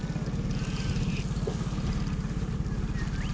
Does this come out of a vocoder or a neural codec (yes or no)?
no